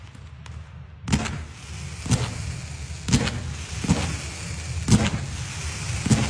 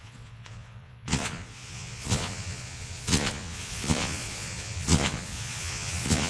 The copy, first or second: second